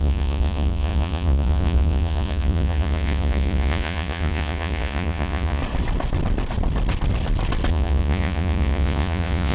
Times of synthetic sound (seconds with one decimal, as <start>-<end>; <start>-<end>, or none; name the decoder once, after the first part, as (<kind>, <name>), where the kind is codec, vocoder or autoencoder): 0.0-5.6 (vocoder, Vocos); 7.7-9.5